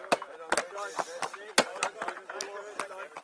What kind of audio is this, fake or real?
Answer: real